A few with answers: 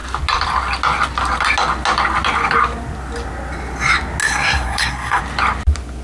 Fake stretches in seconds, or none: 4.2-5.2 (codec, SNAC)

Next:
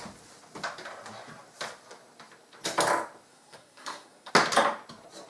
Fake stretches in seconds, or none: 3.3-4.3 (codec, SNAC)

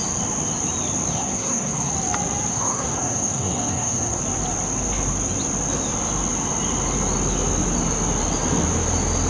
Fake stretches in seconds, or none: 1.1-1.9 (codec, SNAC); 2.5-4.2